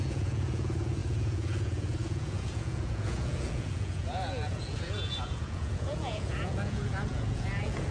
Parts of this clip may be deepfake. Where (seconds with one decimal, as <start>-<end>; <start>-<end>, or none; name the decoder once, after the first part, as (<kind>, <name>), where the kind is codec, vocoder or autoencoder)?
0.0-7.9 (vocoder, Vocos)